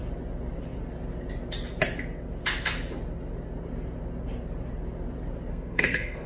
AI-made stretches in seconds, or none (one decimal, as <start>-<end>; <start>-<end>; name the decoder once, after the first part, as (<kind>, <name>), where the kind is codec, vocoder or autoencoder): 5.5-6.3 (codec, SNAC)